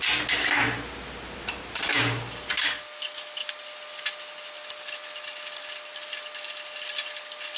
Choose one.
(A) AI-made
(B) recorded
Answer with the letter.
B